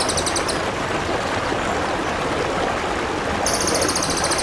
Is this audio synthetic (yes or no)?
no